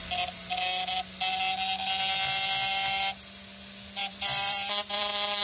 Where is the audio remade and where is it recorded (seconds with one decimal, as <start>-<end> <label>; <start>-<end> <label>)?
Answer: 0.0-4.0 recorded; 4.0-5.4 remade